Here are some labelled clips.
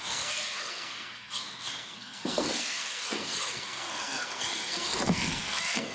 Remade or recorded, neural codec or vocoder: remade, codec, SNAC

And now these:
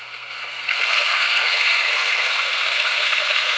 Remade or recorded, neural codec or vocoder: remade, codec, SNAC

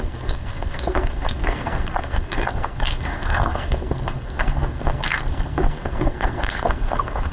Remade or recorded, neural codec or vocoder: remade, codec, SNAC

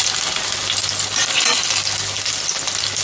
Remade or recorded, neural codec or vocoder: recorded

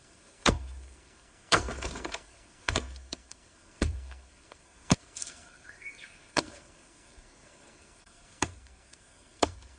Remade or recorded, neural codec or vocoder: remade, codec, SNAC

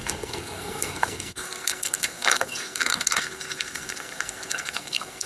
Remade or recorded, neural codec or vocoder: remade, codec, SNAC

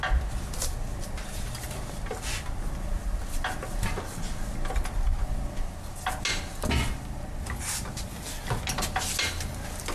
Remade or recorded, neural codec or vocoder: recorded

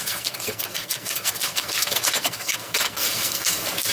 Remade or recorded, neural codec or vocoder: remade, codec, SNAC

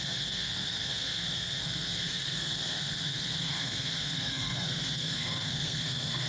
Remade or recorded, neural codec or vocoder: remade, codec, SNAC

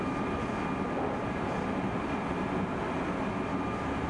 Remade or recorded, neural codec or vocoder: recorded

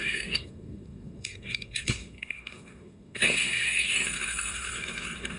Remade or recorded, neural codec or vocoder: remade, codec, SNAC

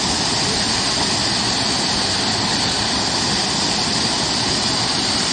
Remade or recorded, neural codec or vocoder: recorded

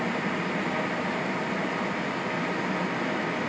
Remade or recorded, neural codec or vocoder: recorded